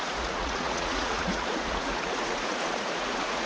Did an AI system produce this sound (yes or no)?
yes